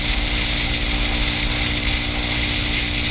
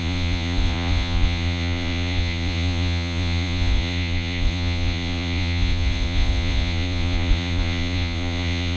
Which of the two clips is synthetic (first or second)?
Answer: second